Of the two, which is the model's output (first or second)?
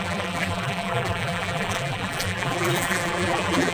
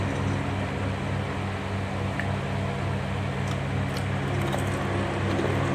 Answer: first